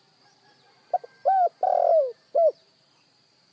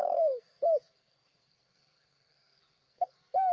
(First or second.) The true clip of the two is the first